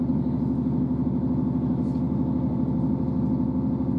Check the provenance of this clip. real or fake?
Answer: real